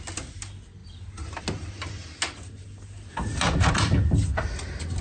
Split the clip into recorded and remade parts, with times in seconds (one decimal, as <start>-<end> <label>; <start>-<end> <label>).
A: 0.0-5.0 recorded